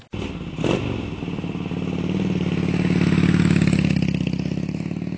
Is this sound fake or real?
real